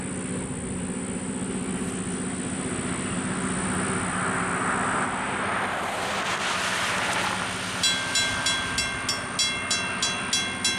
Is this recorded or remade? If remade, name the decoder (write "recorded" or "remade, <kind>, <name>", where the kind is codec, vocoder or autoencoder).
recorded